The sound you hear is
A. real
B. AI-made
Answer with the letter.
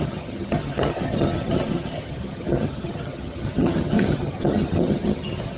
B